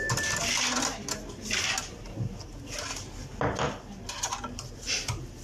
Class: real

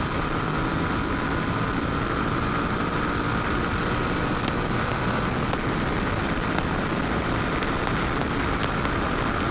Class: real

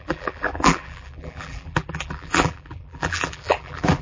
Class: fake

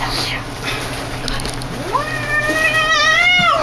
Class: real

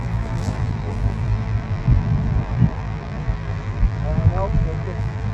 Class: fake